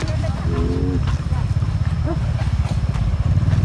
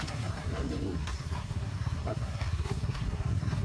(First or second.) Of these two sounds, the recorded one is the first